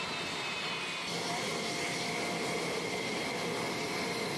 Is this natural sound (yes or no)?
yes